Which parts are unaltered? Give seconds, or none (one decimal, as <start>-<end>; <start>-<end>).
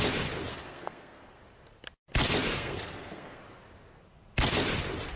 0.0-0.5; 1.4-2.5; 3.4-5.2